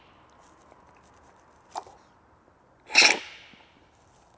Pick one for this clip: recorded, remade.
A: recorded